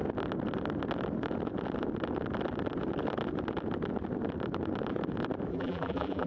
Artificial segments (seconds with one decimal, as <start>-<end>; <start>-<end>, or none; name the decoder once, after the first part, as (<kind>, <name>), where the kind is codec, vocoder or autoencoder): 5.5-6.3 (vocoder, BigVGAN v2)